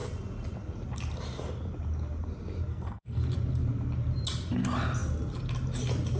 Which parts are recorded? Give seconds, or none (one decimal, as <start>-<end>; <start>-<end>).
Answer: 0.0-2.7; 3.2-6.2